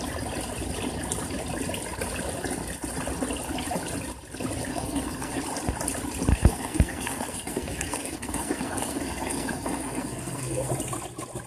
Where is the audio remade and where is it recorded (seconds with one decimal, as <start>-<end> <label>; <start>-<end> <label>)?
0.0-4.7 recorded; 4.7-5.4 remade; 5.4-6.3 recorded; 6.3-10.7 remade; 10.7-11.5 recorded